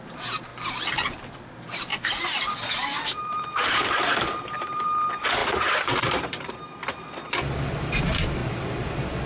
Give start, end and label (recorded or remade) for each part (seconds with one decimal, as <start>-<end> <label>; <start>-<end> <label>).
0.0-0.5 recorded; 0.5-1.5 remade; 1.5-1.9 recorded; 1.9-4.8 remade; 4.8-5.4 recorded; 5.4-6.5 remade; 6.5-8.4 recorded; 8.4-8.9 remade; 8.9-9.3 recorded